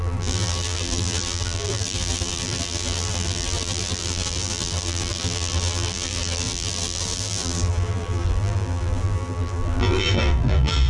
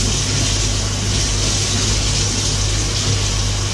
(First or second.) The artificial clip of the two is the first